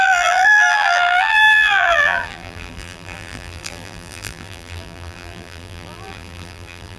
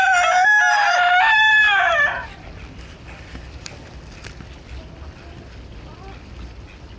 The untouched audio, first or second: second